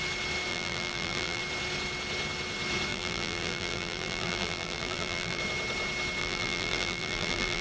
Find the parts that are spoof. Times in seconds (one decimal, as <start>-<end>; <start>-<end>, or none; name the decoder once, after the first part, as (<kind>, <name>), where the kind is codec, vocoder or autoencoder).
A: 0.5-1.4 (vocoder, BigVGAN v2); 2.9-5.4; 6.2-7.6